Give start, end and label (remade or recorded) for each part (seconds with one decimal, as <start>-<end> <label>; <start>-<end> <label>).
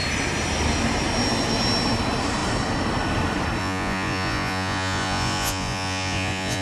0.0-3.6 recorded; 3.6-6.6 remade